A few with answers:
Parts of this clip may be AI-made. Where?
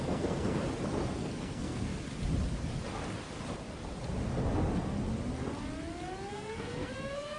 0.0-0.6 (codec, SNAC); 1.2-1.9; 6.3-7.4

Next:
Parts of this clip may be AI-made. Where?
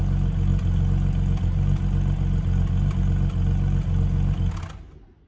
none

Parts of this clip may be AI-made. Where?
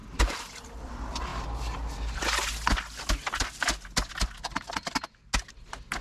none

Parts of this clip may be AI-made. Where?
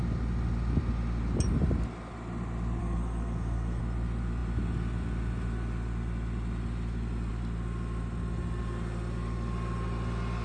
2.8-3.8 (codec, SNAC)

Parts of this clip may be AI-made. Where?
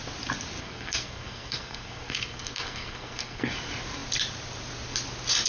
0.6-3.5 (codec, SNAC)